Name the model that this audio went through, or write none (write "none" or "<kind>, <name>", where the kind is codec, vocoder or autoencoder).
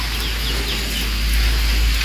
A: none